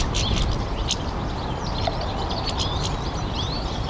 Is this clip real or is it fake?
real